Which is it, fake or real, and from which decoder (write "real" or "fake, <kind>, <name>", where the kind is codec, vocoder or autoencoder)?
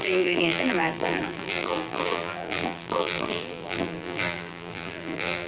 fake, vocoder, BigVGAN v2